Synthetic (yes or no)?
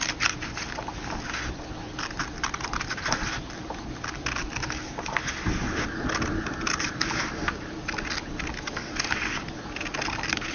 no